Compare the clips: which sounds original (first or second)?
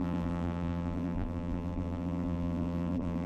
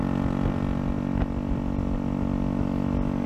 second